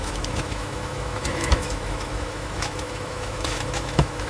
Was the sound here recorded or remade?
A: remade